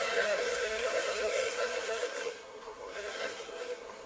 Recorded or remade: remade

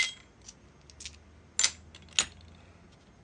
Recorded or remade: recorded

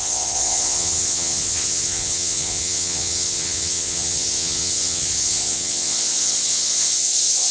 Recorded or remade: remade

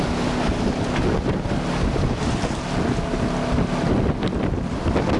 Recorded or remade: recorded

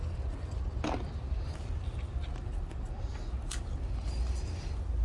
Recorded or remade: recorded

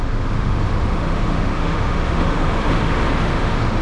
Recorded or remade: remade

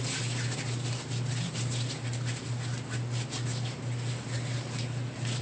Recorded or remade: recorded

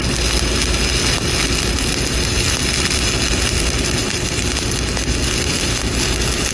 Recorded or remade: recorded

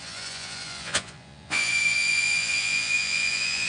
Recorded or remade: remade